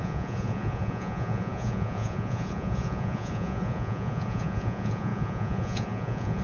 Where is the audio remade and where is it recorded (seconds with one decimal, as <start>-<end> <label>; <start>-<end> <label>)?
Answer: 0.0-6.4 remade